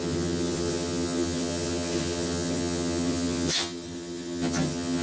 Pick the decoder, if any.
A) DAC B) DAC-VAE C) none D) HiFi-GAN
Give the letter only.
D